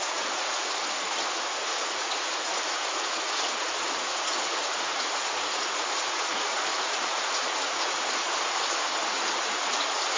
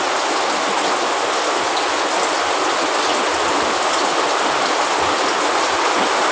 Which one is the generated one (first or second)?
first